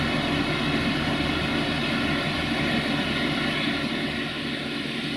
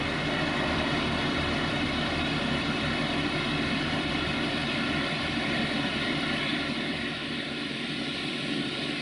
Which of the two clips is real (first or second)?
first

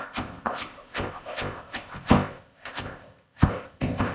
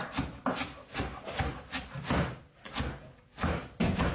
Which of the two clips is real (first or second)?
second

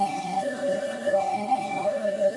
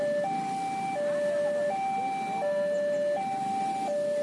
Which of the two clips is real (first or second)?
second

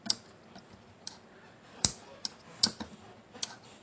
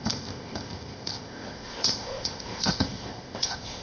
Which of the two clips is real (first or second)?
first